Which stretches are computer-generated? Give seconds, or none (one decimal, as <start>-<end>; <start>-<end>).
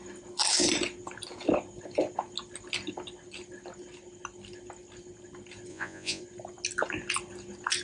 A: 5.7-6.2